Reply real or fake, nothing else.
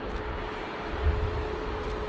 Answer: real